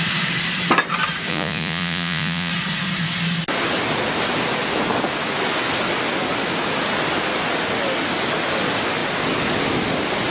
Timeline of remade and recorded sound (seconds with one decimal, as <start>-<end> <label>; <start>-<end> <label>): 0.0-1.3 recorded; 1.3-2.5 remade; 2.5-10.3 recorded